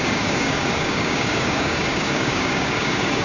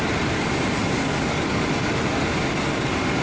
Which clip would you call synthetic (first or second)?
first